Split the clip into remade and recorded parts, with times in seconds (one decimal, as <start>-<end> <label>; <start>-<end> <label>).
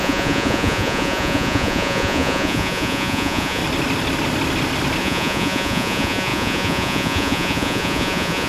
0.0-3.6 remade; 3.6-5.0 recorded; 5.0-8.5 remade